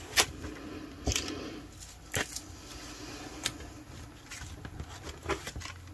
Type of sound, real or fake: real